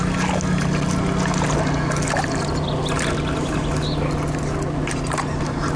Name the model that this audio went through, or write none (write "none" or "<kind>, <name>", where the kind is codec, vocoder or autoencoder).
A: none